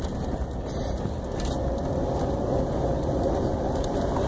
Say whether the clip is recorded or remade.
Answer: recorded